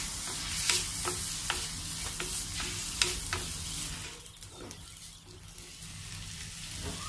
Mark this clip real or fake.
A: real